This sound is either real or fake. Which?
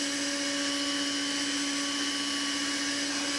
real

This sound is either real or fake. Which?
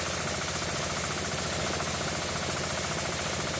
real